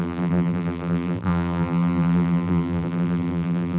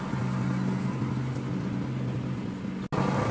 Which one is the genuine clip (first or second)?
second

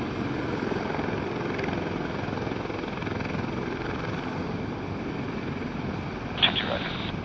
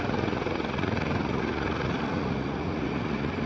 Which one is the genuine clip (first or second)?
first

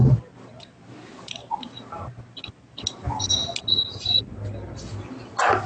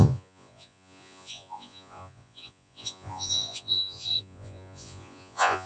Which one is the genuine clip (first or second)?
first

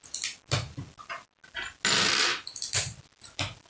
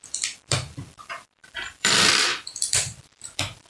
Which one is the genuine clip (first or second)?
first